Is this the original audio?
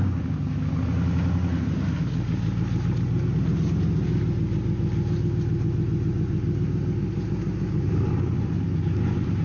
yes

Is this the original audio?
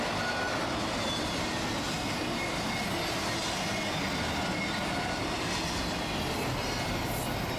yes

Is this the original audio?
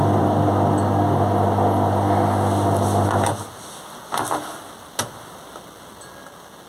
yes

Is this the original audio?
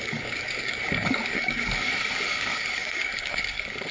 no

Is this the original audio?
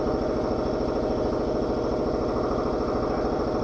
yes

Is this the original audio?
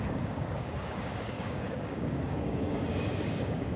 no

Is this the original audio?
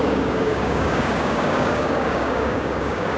no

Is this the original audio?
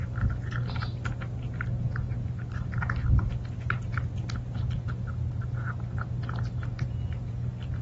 yes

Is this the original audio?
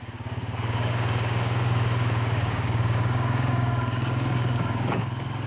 no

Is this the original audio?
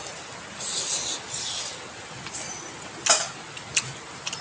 yes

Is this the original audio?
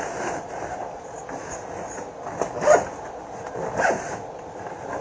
yes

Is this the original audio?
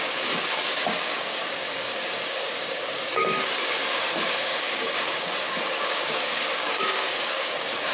no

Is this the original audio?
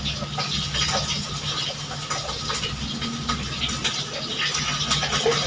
yes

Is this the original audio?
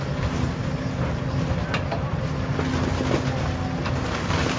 yes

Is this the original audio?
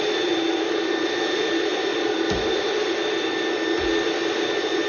yes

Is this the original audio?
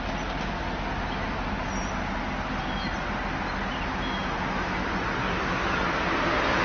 yes